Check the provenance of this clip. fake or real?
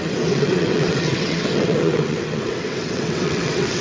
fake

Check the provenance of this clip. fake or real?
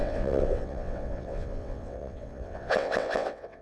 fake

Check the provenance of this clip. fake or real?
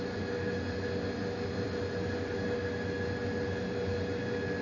real